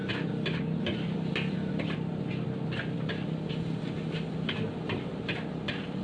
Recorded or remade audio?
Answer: recorded